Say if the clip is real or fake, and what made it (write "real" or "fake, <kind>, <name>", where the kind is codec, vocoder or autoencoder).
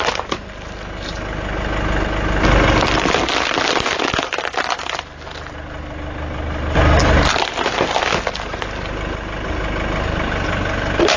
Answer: real